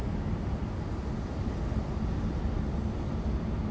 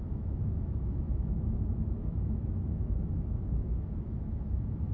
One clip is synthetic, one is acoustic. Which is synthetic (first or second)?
second